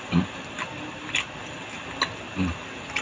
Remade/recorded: recorded